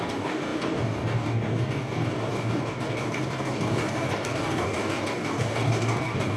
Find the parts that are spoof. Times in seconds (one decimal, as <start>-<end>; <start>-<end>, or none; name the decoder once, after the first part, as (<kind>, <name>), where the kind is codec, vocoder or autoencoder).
0.0-6.4 (codec, DAC)